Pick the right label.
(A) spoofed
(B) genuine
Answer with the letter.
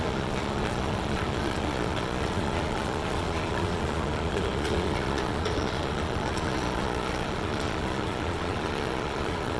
A